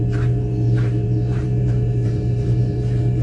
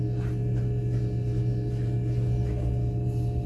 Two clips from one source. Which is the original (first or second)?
second